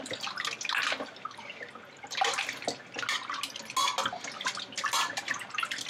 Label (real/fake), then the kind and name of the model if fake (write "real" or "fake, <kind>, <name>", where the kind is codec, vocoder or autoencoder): real